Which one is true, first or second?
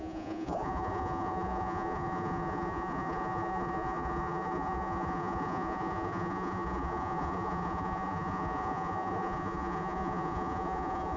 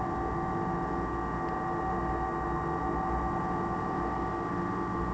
second